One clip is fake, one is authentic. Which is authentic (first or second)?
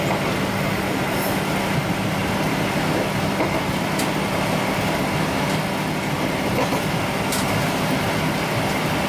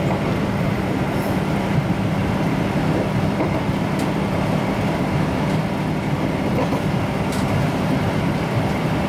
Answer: first